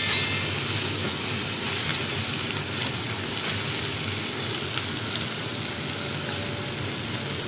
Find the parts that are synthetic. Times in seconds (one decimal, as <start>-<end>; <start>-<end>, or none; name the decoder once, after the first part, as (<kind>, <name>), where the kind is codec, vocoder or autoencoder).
none